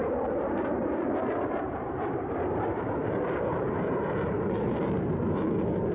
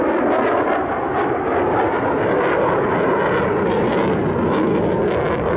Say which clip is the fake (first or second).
first